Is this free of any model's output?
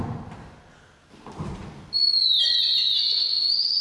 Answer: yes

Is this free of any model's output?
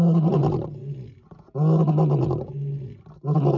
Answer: yes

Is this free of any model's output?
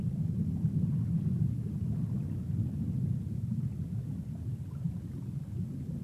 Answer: yes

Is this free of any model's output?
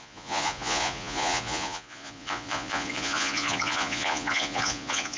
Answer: no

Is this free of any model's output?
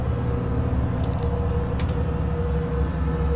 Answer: yes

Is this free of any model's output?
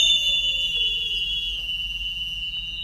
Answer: yes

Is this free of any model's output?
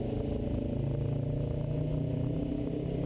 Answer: yes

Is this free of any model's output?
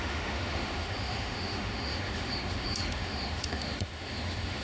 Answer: no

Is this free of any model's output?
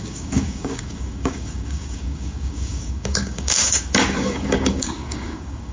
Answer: no